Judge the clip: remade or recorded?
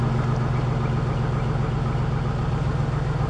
recorded